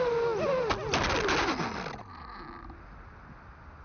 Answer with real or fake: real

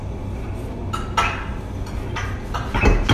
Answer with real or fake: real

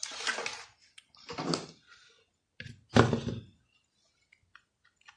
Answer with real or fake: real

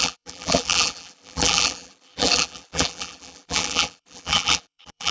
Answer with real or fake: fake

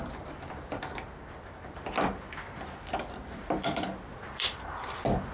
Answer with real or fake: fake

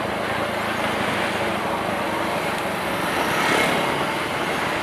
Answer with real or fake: real